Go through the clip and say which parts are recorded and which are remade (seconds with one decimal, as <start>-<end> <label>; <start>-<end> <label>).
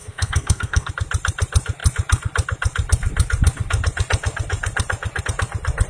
0.0-0.9 remade; 0.9-5.9 recorded